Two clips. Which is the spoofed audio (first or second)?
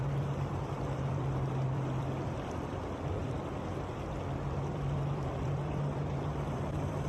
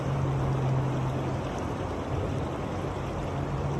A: first